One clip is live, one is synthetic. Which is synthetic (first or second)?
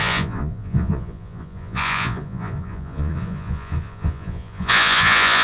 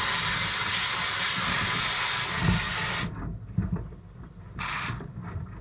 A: first